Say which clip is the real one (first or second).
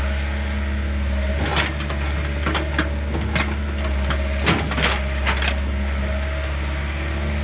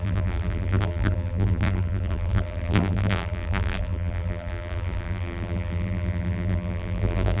first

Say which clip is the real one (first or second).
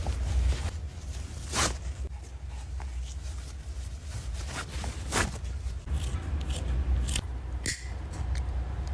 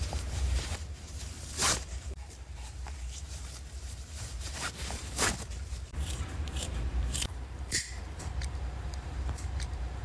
first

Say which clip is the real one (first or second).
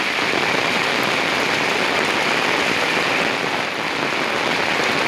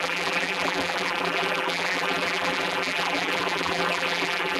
first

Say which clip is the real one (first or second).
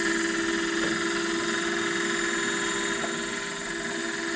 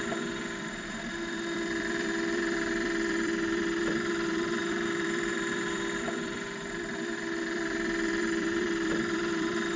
first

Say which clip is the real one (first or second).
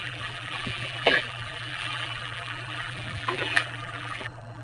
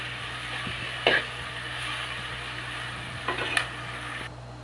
second